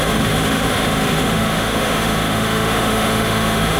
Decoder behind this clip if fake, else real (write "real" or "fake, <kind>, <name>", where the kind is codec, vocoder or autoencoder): fake, autoencoder, DAC-VAE